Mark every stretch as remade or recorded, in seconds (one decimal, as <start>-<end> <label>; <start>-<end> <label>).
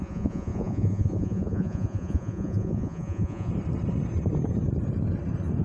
0.0-3.5 remade; 3.5-5.6 recorded